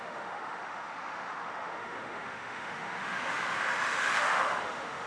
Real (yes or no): no